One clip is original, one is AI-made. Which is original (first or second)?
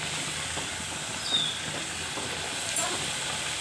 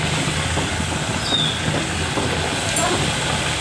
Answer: second